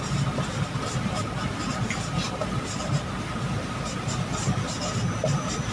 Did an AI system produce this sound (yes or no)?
yes